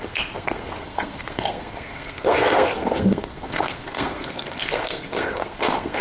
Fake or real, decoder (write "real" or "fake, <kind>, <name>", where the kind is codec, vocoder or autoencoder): fake, codec, SNAC